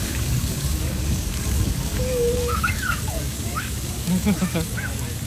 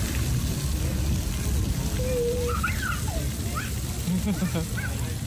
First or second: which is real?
second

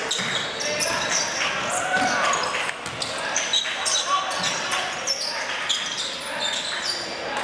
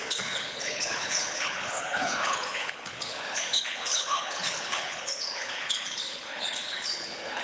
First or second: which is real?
first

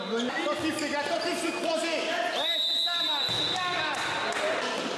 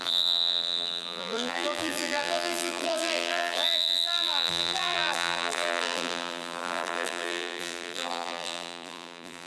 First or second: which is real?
first